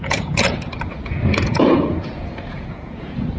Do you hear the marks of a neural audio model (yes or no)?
yes